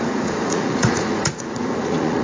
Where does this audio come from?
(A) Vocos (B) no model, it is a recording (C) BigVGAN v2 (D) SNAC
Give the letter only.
A